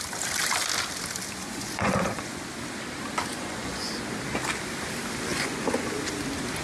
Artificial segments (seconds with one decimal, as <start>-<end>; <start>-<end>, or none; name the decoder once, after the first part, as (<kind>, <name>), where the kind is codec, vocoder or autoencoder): 1.4-2.4 (vocoder, Vocos); 3.3-3.9; 5.3-5.9